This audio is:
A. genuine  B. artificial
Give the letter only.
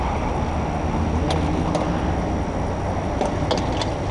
A